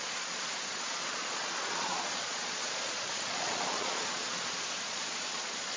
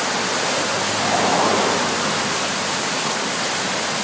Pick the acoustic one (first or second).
second